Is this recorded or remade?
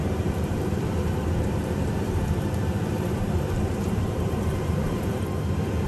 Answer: remade